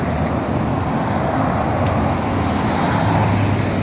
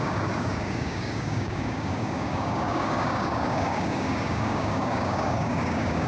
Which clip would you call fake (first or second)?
second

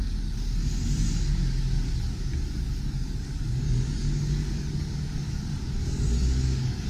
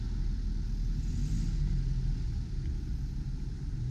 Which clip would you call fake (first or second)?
first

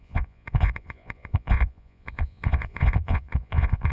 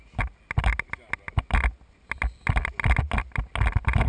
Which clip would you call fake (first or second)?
first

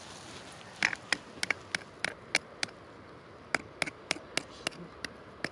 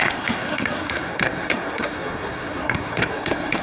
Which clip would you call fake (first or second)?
second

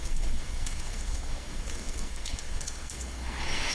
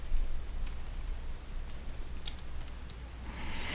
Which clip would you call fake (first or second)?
first